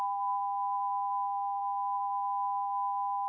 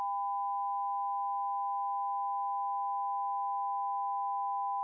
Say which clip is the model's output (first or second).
first